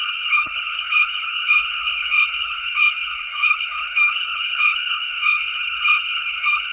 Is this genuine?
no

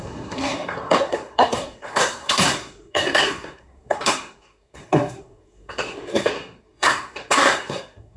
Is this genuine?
no